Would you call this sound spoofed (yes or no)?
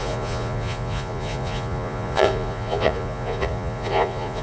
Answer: yes